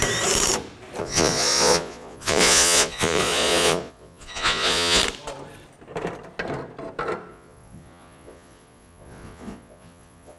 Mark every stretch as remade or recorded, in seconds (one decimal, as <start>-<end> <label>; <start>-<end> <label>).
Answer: 0.0-1.0 recorded; 1.0-5.0 remade; 5.0-7.3 recorded; 7.3-10.4 remade